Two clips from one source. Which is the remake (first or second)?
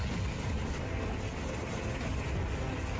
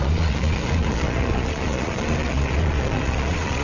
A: second